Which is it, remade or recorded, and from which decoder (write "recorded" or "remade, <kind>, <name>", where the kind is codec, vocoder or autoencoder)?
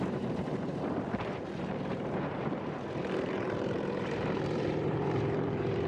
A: remade, vocoder, BigVGAN v2